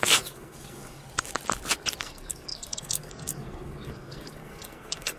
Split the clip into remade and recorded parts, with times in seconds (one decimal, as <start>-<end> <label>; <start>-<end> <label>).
0.0-1.0 remade; 1.0-2.0 recorded; 2.0-5.2 remade